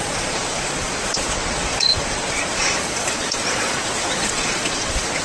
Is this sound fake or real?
fake